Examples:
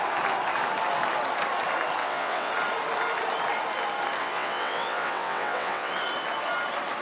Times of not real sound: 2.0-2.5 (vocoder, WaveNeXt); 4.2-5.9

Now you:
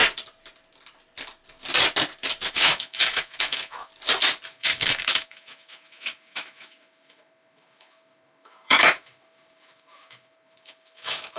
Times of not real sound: 2.5-3.9 (autoencoder, DAC-VAE); 4.5-11.4